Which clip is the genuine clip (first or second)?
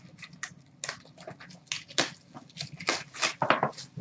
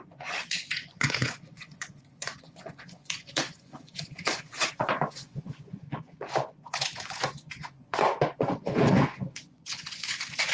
first